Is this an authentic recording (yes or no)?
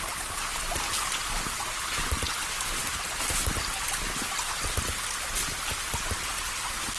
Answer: yes